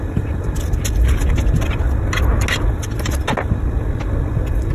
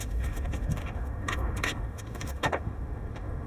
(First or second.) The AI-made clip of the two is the second